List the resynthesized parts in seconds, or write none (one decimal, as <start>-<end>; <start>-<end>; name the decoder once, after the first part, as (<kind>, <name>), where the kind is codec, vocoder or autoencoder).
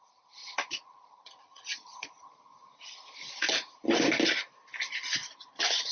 0.4-2.4 (vocoder, Vocos)